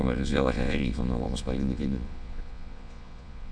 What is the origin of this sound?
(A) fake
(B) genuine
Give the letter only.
A